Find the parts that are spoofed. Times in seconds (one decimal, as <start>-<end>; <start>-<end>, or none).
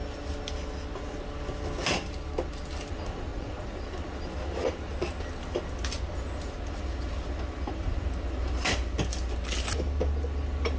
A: 3.3-3.9